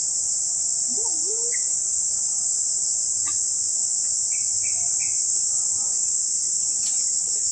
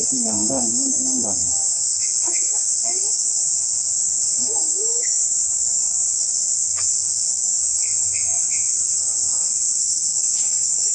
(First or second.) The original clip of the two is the first